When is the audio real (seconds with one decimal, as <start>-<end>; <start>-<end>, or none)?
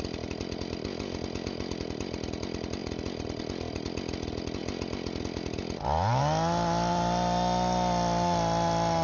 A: 0.0-9.0